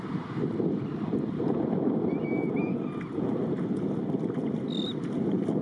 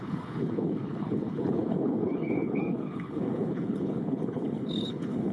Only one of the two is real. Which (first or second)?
first